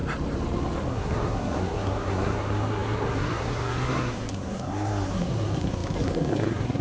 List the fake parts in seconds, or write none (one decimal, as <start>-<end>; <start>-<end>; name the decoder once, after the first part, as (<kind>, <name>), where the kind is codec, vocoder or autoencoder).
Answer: 0.9-6.8 (codec, SNAC)